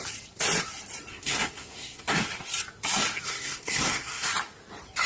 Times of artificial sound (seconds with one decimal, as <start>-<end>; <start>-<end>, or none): 1.1-2.2; 3.1-4.3